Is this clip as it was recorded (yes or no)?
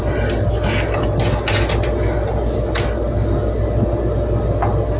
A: yes